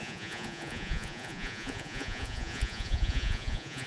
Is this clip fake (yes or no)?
yes